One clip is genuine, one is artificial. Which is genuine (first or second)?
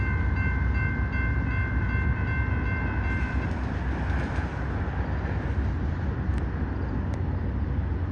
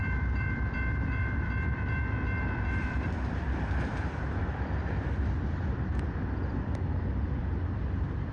first